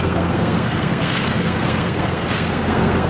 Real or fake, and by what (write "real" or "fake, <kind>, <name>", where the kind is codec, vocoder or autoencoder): fake, codec, SNAC